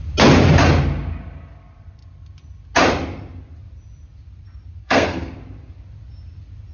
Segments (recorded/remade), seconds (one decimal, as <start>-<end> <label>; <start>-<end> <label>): 0.0-4.8 recorded; 4.8-5.4 remade; 5.4-6.7 recorded